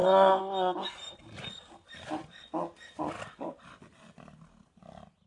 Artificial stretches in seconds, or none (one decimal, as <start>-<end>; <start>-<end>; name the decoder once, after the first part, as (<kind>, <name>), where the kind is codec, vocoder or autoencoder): none